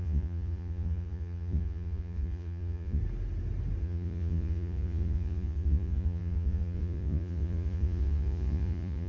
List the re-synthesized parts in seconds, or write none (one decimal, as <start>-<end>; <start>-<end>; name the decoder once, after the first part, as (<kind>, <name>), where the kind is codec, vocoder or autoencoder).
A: 0.0-3.0 (vocoder, Vocos); 3.8-9.1